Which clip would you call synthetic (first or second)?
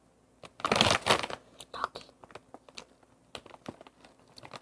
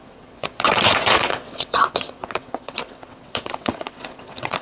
second